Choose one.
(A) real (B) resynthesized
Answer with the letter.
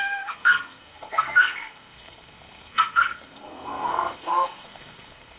B